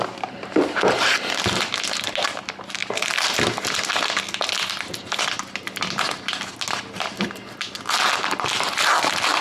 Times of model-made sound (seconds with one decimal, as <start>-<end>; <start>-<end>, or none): none